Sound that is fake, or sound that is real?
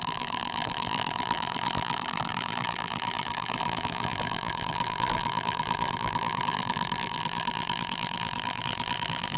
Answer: fake